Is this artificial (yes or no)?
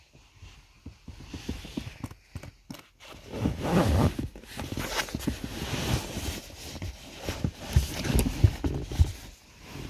no